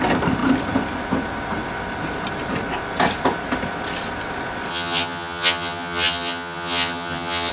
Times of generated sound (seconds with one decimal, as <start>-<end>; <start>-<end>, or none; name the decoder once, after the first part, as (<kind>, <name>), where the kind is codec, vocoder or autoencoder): 4.7-7.5 (vocoder, HiFi-GAN)